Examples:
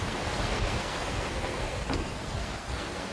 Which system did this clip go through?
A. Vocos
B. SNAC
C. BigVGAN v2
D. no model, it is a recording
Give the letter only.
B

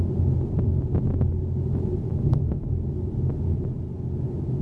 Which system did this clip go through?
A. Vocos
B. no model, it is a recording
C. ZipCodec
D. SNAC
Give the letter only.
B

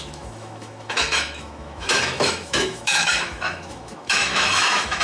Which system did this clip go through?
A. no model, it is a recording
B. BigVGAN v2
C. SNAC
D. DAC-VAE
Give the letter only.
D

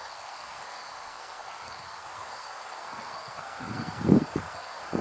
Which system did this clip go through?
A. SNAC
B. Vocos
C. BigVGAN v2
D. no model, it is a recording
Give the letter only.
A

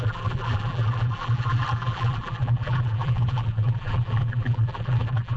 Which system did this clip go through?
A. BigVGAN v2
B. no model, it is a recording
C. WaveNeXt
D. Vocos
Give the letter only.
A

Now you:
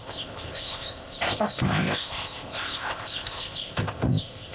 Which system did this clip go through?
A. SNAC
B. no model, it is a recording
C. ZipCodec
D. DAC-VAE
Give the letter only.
C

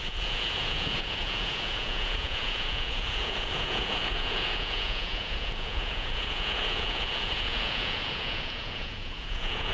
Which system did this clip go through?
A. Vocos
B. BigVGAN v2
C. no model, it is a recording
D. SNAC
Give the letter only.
A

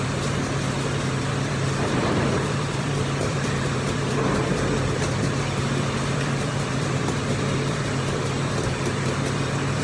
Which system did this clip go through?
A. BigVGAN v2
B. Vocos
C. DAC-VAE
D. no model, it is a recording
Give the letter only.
A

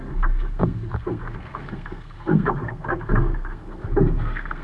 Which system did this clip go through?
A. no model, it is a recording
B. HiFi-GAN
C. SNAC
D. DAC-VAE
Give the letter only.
C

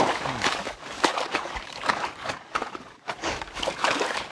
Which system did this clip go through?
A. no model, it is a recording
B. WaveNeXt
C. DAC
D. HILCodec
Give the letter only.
C